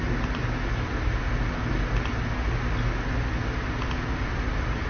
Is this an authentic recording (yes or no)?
yes